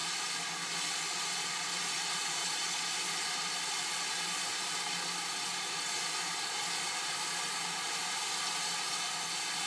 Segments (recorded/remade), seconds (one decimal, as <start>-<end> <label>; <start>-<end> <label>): 0.0-2.4 recorded; 2.4-2.9 remade; 2.9-9.7 recorded